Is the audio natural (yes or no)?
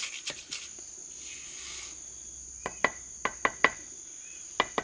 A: yes